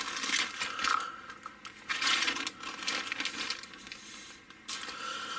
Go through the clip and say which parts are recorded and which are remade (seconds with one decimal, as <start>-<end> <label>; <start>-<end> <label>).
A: 0.0-1.9 recorded; 1.9-2.4 remade; 2.4-5.4 recorded